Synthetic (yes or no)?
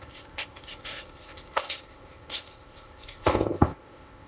yes